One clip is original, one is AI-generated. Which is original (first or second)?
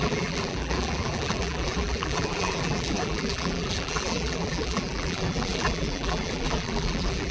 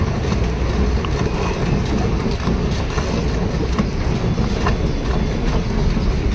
second